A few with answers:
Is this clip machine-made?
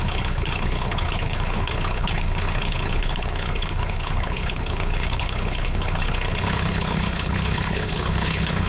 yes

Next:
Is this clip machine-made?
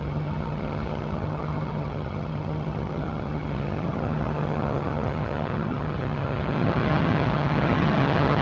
yes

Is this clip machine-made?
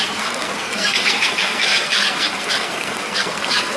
yes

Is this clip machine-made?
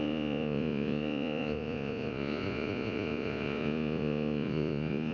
yes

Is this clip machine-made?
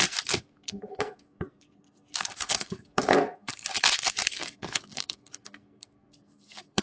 yes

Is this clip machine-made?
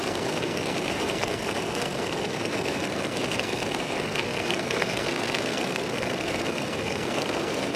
yes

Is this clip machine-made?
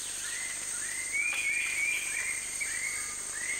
no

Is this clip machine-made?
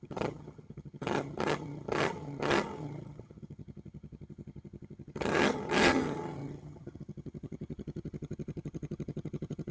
yes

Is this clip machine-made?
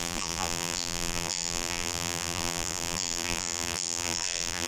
yes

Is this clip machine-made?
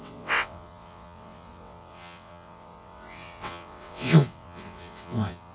yes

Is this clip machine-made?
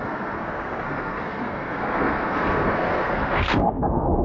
yes